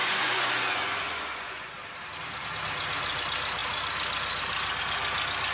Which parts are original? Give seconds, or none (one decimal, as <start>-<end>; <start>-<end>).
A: 1.7-5.5

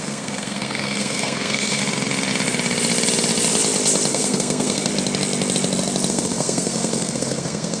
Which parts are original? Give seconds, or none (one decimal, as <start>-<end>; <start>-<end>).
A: 1.8-4.1; 4.9-6.1

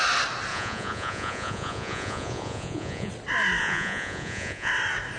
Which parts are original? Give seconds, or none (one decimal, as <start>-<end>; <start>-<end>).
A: 0.0-0.5; 3.1-3.6; 4.7-5.2

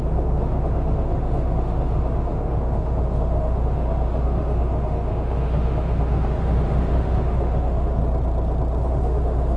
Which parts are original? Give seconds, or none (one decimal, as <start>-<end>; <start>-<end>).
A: 8.0-8.9

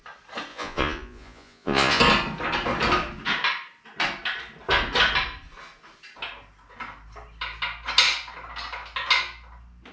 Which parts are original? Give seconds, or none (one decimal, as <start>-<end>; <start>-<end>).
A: 0.0-0.5; 2.0-9.9

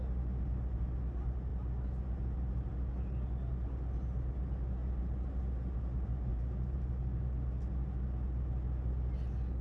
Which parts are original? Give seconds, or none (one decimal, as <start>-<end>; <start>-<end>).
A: 0.0-6.3; 6.9-9.6

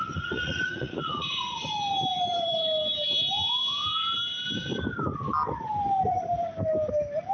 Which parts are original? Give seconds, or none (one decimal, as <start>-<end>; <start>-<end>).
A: 1.7-7.3